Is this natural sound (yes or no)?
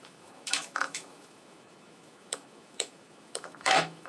no